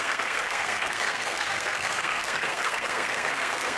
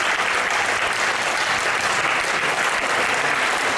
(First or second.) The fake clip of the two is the first